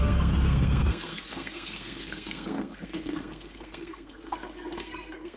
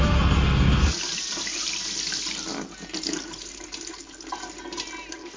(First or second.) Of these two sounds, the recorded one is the second